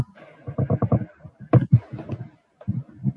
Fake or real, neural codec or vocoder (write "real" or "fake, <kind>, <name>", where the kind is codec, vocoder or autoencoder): real